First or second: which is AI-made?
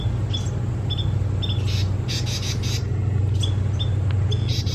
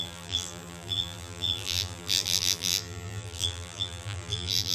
second